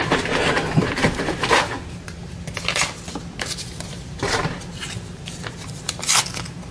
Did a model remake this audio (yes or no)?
no